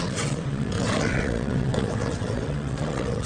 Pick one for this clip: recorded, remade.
remade